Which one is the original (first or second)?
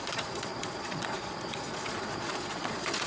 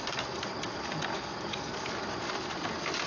second